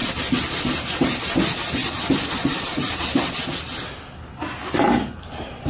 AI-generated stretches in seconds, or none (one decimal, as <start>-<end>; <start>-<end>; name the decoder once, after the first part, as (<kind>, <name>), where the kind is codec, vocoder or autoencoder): none